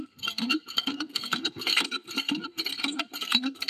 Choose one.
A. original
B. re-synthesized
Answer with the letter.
B